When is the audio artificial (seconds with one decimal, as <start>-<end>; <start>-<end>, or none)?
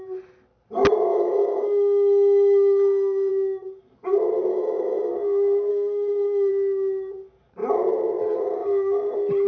1.1-3.3; 4.5-5.1; 5.7-6.5